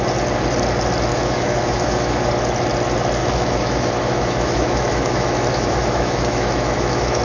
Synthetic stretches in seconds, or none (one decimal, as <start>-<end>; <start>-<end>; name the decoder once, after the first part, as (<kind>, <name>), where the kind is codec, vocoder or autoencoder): 1.1-2.3 (autoencoder, DAC-VAE); 3.2-7.2